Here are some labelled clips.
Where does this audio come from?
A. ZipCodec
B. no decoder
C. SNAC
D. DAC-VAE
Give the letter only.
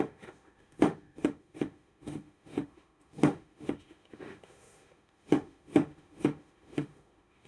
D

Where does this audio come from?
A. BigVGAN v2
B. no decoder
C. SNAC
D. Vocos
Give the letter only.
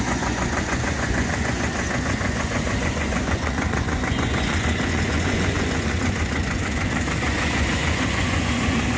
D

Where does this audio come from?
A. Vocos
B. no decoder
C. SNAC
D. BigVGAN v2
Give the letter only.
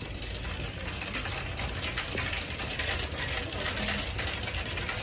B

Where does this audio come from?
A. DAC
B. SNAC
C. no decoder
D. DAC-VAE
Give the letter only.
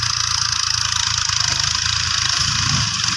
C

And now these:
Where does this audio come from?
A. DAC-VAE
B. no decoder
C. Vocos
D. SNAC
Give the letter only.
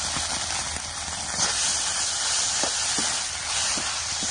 B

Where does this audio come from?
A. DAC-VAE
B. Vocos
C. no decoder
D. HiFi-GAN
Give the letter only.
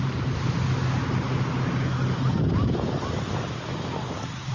C